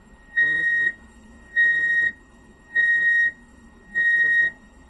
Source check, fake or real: fake